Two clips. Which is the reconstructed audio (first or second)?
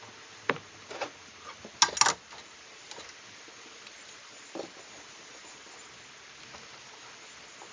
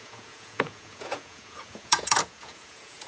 second